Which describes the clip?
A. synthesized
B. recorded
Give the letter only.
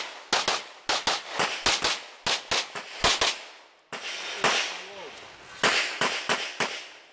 B